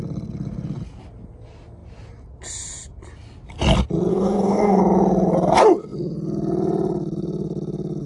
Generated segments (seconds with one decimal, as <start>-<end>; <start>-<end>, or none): 4.1-4.8